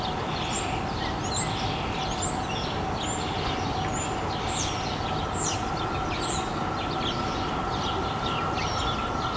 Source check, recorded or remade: recorded